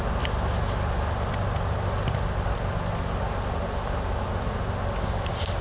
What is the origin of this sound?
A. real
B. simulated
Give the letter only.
A